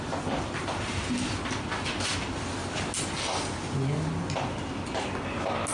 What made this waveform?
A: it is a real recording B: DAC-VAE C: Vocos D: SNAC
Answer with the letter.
A